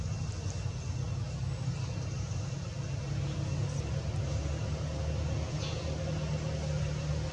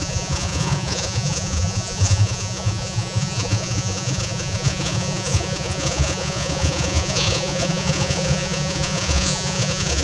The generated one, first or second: second